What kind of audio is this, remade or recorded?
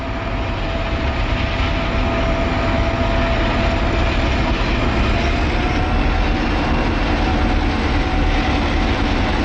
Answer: recorded